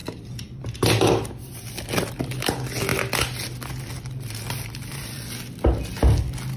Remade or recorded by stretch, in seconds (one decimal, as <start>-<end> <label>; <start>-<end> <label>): 0.0-6.6 recorded